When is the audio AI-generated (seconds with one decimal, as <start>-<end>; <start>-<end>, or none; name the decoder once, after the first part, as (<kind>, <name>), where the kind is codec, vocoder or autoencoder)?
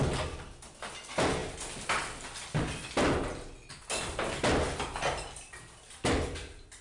none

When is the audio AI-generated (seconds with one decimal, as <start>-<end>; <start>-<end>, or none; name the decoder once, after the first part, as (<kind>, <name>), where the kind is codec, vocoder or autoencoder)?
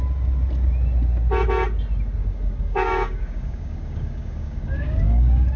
2.2-5.6 (codec, DAC)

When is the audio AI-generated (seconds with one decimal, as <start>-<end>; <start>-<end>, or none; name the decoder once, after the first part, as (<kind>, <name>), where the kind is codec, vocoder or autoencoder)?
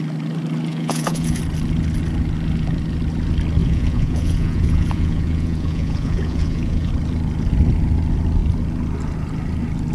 0.7-1.4 (vocoder, Vocos); 3.6-6.9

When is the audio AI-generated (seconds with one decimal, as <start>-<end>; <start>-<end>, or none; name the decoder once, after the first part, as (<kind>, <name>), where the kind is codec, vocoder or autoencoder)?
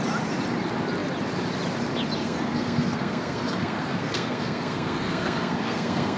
2.2-6.2 (codec, SNAC)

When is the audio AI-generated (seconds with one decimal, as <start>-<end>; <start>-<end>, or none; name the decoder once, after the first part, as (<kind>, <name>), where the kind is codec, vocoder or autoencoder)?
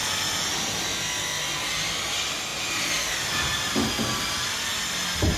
none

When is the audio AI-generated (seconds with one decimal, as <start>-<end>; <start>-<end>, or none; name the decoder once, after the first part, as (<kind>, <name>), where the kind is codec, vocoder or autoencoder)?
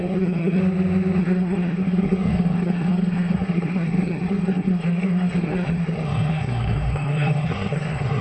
0.0-0.6 (codec, SNAC); 1.2-8.2